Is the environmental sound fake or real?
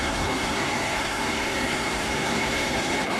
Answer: fake